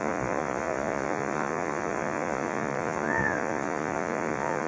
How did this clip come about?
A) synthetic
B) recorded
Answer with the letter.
A